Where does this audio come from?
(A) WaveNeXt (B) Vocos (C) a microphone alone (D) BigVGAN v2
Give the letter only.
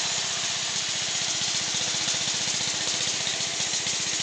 C